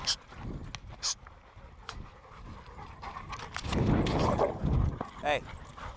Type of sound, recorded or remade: recorded